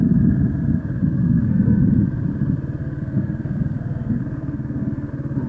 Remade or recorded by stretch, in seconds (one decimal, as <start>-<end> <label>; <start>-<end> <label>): 0.0-1.2 recorded; 1.2-1.8 remade; 1.8-2.8 recorded; 2.8-5.1 remade; 5.1-5.5 recorded